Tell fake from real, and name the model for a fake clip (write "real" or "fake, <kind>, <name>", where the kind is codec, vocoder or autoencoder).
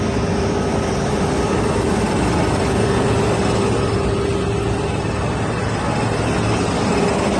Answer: real